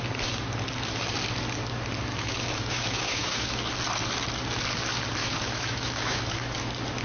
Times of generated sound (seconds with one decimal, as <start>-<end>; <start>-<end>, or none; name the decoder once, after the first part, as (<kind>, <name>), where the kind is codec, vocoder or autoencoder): 2.1-3.7 (autoencoder, DAC-VAE); 5.2-6.6